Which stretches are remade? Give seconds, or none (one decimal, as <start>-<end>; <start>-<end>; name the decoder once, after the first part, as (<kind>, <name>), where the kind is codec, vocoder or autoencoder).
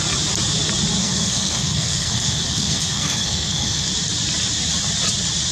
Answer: 1.0-3.9 (codec, SNAC)